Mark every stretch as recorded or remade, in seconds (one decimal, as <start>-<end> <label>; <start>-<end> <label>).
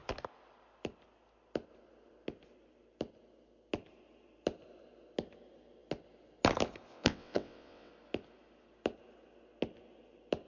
0.0-6.9 recorded; 6.9-7.9 remade; 7.9-10.5 recorded